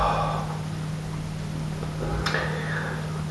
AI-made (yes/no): no